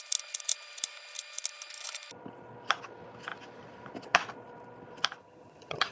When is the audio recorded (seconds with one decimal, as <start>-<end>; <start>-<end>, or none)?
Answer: 0.0-5.2